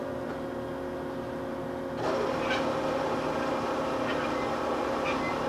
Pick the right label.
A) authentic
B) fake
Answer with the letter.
A